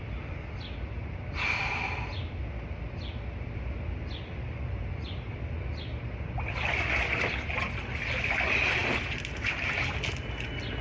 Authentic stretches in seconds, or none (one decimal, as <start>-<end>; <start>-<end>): 0.0-10.8